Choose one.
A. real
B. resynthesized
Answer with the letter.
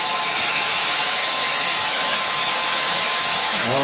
B